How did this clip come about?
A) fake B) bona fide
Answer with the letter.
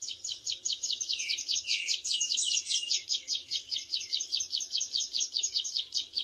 A